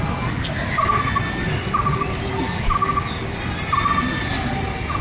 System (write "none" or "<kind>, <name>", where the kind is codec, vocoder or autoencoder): none